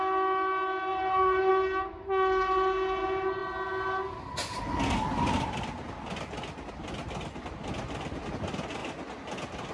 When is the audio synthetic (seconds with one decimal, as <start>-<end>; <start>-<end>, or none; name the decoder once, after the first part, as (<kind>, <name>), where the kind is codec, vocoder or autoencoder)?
0.9-1.5 (vocoder, BigVGAN v2)

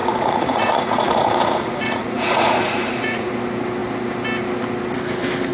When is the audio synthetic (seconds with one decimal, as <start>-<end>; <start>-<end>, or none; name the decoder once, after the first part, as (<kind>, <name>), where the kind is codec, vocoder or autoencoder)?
0.0-3.3 (vocoder, Vocos)

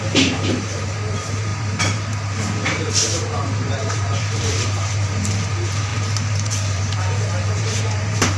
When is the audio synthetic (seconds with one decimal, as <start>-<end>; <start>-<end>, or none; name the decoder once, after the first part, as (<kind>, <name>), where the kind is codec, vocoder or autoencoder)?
0.0-8.4 (vocoder, BigVGAN v2)

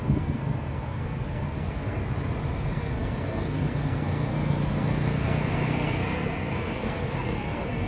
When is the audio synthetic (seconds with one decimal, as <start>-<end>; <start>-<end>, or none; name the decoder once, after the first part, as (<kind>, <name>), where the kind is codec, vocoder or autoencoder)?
0.0-2.0 (codec, SNAC); 2.6-7.9

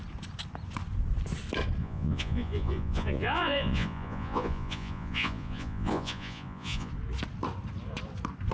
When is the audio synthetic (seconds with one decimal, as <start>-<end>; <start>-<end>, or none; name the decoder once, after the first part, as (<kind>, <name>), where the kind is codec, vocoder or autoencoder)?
1.8-6.9 (vocoder, Vocos)

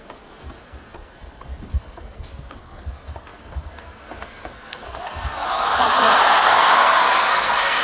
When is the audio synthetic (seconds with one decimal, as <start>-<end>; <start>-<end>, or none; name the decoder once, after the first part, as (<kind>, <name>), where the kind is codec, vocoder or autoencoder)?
0.0-7.8 (codec, SNAC)

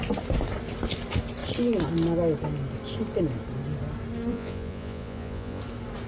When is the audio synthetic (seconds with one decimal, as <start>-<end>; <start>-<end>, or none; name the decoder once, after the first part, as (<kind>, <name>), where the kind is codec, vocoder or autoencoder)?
4.3-5.6 (vocoder, Vocos)